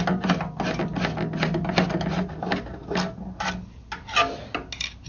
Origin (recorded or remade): recorded